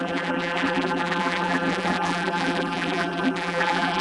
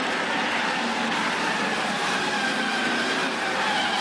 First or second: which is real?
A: second